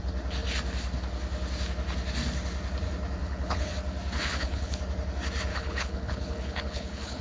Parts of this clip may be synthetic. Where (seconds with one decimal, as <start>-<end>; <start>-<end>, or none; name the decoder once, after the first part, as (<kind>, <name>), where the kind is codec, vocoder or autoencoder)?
3.2-3.7 (codec, HILCodec); 4.2-4.8; 5.5-7.2